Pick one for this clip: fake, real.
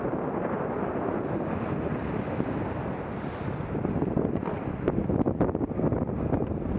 real